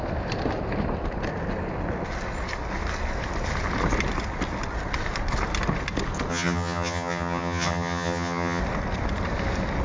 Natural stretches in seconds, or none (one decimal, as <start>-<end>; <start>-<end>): 0.0-6.3; 8.6-9.8